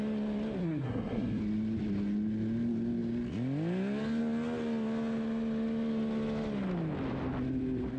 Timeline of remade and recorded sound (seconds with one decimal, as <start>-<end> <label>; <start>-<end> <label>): 0.0-0.6 recorded; 0.6-1.4 remade; 1.4-8.0 recorded